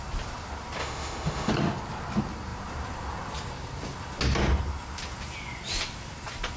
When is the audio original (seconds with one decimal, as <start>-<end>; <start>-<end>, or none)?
0.0-0.8; 1.5-6.6